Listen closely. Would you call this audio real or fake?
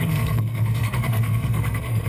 fake